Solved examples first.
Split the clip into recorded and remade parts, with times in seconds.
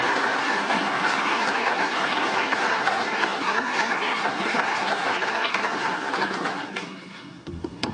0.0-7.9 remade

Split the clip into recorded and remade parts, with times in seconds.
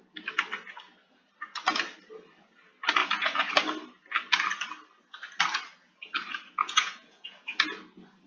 0.0-3.0 recorded; 3.0-3.5 remade; 3.5-6.6 recorded; 6.6-7.6 remade; 7.6-8.3 recorded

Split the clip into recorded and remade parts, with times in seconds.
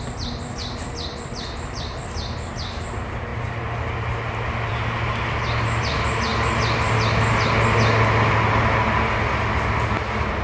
0.0-10.4 recorded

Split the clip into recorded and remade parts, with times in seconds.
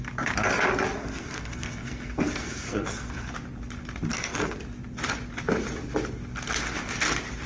0.0-1.0 recorded; 1.0-3.3 remade; 3.3-4.1 recorded; 4.1-4.6 remade; 4.6-7.5 recorded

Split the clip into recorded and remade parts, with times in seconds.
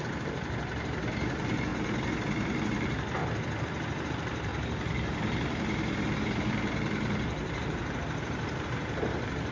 0.0-1.7 remade; 1.7-2.6 recorded; 2.6-3.2 remade; 3.2-4.1 recorded; 4.1-4.5 remade; 4.5-6.5 recorded; 6.5-9.5 remade